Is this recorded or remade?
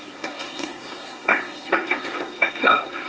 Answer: remade